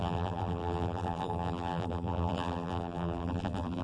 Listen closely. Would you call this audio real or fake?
fake